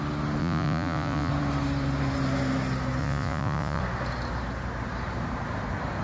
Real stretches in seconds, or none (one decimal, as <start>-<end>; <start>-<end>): 0.0-0.4; 1.3-3.0; 3.8-6.0